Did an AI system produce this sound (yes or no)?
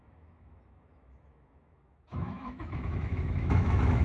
yes